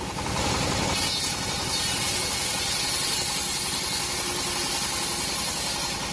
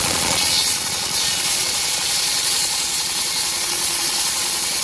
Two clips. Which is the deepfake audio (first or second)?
second